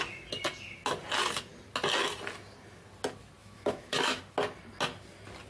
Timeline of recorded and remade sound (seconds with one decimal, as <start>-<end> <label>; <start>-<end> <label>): 0.0-3.4 recorded; 3.4-4.2 remade; 4.2-5.5 recorded